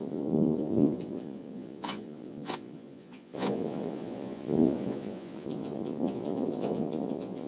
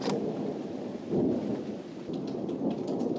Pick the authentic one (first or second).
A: second